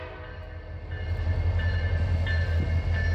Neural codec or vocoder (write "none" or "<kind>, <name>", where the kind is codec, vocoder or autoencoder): none